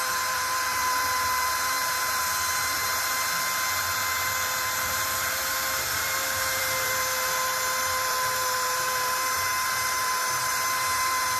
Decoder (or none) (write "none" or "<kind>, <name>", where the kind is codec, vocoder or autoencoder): vocoder, BigVGAN v2